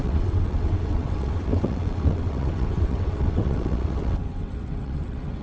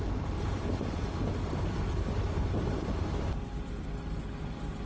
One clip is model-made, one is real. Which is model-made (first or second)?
first